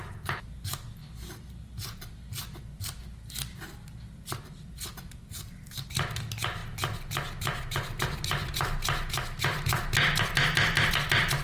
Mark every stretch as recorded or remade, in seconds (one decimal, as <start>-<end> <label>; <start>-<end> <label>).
0.0-11.4 recorded